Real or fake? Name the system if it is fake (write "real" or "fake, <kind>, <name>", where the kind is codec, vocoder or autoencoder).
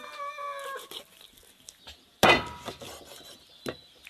real